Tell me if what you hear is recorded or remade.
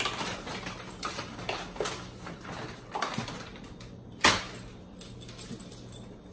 recorded